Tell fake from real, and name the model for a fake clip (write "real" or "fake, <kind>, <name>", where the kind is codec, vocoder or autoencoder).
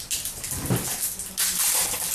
real